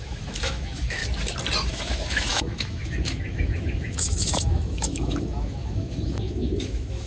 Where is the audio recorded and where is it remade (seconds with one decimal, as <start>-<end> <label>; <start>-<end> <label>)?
0.0-1.0 remade; 1.0-1.7 recorded; 1.7-7.1 remade